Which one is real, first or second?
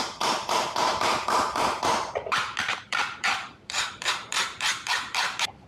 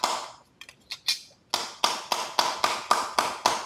second